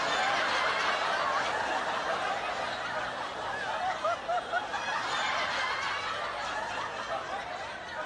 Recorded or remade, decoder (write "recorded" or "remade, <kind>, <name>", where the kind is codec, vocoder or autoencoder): recorded